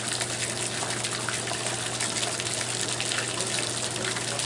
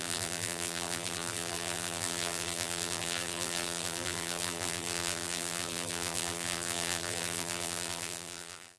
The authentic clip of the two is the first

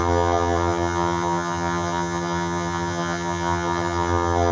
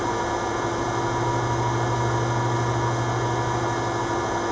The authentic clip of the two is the second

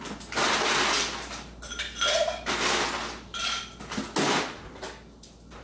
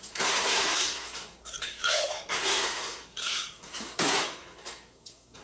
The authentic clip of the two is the first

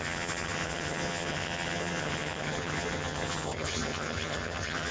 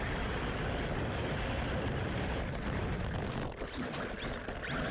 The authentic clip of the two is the second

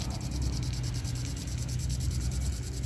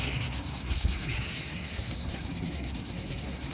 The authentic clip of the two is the first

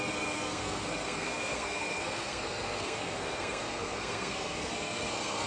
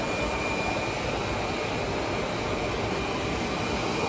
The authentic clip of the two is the second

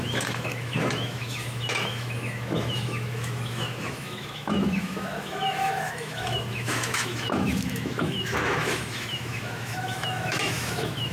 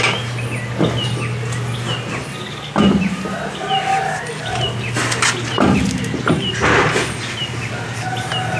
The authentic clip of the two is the second